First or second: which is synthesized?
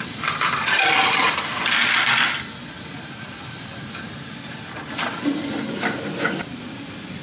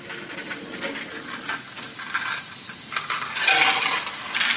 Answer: first